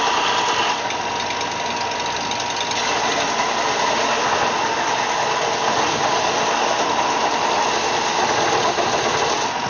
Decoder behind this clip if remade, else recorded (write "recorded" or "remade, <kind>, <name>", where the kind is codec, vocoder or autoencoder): recorded